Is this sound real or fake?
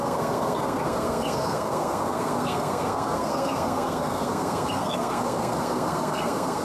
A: fake